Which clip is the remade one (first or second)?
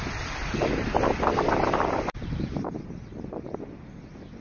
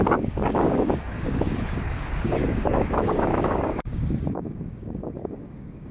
second